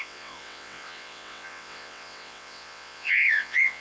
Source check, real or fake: fake